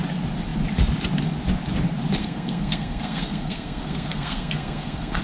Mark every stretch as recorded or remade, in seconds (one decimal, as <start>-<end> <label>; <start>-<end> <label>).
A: 0.0-2.2 recorded; 2.2-5.2 remade